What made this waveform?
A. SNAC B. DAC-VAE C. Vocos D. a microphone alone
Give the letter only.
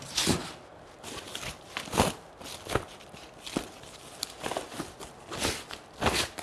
D